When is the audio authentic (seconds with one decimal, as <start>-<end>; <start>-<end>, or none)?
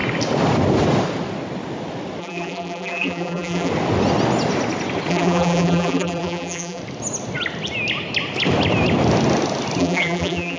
0.0-2.2; 3.7-5.1; 6.8-9.8